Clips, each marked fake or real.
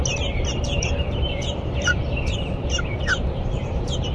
fake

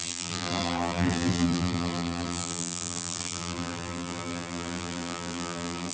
fake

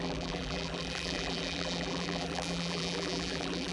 fake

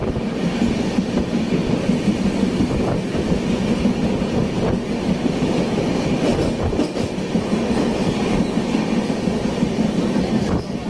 real